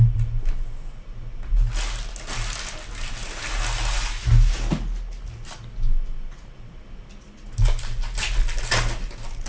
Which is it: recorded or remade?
recorded